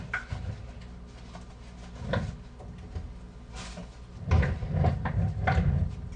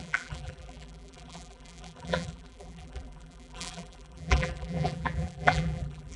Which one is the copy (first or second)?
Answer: second